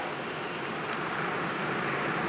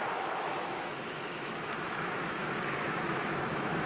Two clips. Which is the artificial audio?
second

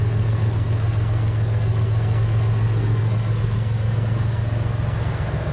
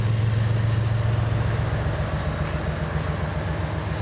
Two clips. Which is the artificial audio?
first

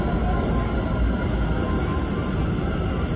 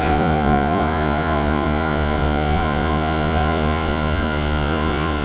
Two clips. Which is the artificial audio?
second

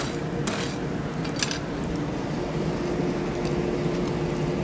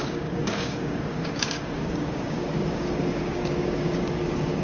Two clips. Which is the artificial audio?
second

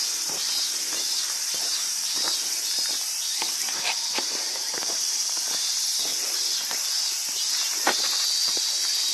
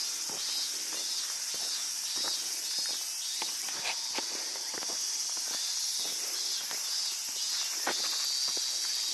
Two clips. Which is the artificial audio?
first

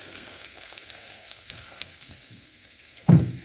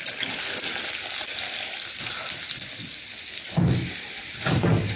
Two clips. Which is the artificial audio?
first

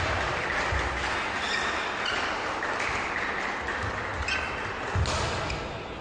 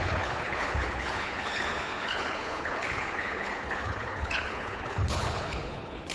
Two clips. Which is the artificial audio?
second